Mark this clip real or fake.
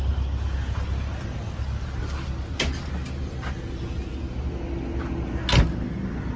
real